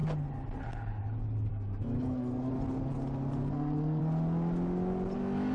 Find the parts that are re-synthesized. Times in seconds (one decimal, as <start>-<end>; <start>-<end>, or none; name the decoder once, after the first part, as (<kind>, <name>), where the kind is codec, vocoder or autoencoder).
1.5-2.5 (codec, SNAC); 3.4-4.0